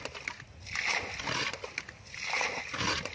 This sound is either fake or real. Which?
real